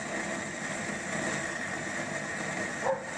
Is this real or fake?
real